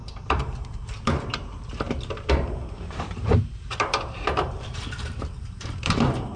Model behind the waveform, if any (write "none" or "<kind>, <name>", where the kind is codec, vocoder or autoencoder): vocoder, BigVGAN v2